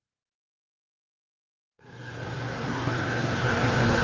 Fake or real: fake